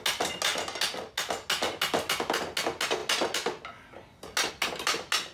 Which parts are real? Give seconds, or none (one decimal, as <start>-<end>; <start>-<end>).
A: 0.0-5.3

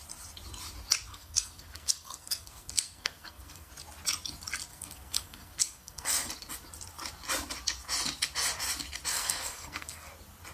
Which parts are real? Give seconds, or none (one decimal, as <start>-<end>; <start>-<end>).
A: 0.0-1.1; 3.7-4.7; 6.3-9.1; 10.1-10.5

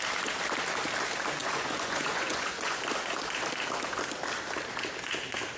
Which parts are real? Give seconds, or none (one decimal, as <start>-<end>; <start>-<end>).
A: 0.0-1.4; 2.8-5.6

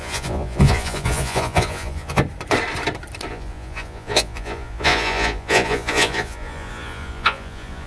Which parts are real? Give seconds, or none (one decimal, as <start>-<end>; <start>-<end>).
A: 2.2-3.3

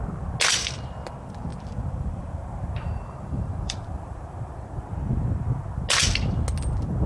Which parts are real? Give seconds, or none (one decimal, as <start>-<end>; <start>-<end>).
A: 0.0-1.5; 4.4-7.1

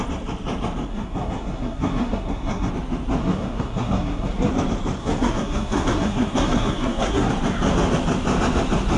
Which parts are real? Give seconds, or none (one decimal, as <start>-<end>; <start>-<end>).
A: 0.0-0.9; 2.7-3.2; 4.5-5.0; 7.3-9.0